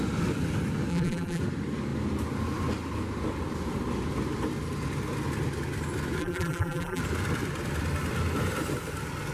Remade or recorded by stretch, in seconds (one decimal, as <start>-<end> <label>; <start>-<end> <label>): 0.0-0.9 recorded; 0.9-1.4 remade; 1.4-6.2 recorded; 6.2-7.0 remade; 7.0-9.3 recorded